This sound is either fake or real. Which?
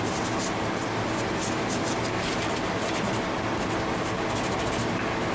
real